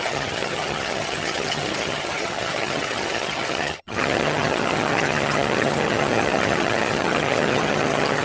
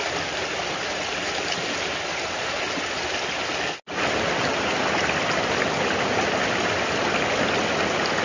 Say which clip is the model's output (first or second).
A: first